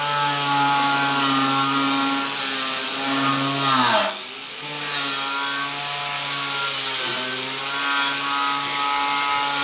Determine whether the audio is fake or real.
real